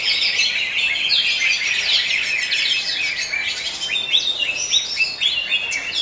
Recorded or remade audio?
recorded